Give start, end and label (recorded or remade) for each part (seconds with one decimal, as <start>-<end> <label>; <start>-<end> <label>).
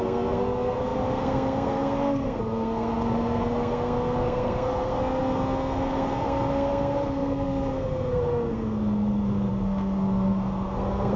0.0-11.2 remade